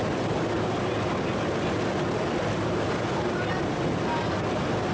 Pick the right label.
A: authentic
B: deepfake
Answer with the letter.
A